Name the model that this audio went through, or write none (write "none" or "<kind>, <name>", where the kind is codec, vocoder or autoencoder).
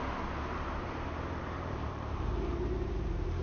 vocoder, BigVGAN v2